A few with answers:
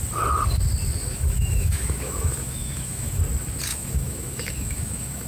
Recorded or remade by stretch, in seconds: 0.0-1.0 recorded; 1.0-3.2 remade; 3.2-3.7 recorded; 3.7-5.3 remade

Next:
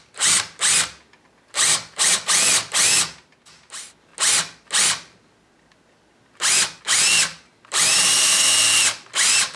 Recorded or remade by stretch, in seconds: 0.0-9.6 recorded

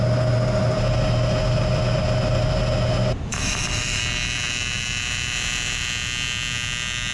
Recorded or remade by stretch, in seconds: 0.0-3.3 recorded; 3.3-4.0 remade; 4.0-7.1 recorded

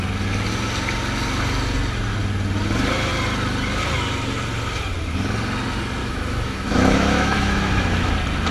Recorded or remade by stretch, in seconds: 0.0-6.0 recorded; 6.0-8.1 remade; 8.1-8.5 recorded

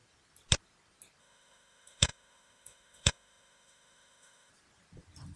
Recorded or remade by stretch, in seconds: 0.0-1.2 recorded; 1.2-4.5 remade; 4.5-5.4 recorded